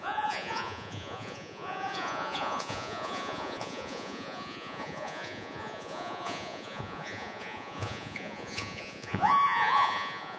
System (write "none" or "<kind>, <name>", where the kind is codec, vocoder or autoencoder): vocoder, Vocos